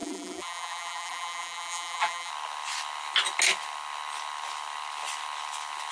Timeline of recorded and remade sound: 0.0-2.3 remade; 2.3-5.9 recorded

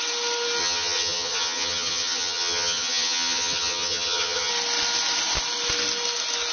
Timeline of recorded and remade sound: 0.0-0.6 recorded; 0.6-4.5 remade; 4.5-6.5 recorded